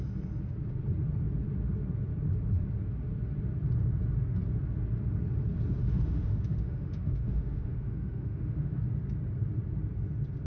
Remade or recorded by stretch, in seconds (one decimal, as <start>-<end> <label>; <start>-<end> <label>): 0.0-5.8 recorded; 5.8-8.8 remade; 8.8-10.5 recorded